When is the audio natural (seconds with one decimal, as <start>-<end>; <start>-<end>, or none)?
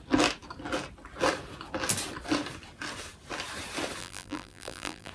0.0-4.0